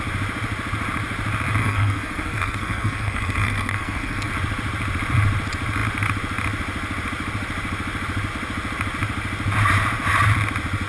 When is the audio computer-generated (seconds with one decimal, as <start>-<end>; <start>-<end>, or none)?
1.6-4.3

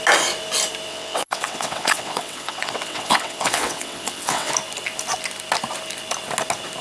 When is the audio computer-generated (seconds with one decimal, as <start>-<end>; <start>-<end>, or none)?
0.9-4.5

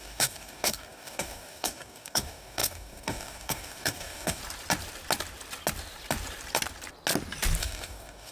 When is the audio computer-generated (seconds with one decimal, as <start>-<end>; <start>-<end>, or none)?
0.0-4.4; 7.6-8.3

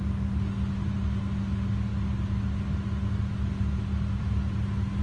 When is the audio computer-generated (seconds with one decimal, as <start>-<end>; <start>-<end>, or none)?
none